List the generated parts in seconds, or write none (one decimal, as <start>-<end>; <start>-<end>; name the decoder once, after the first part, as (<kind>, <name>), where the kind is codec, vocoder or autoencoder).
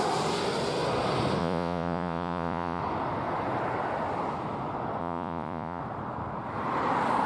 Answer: 1.4-2.8 (vocoder, Vocos); 5.0-5.8